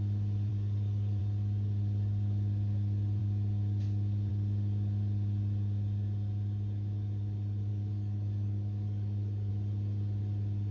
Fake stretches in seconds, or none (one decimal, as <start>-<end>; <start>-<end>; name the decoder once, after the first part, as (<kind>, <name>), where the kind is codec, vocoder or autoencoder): 0.5-1.2 (codec, DAC); 7.7-9.5